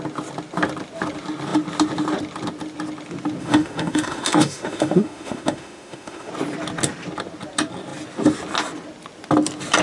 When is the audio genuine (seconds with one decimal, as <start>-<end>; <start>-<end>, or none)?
0.0-3.4; 6.3-9.8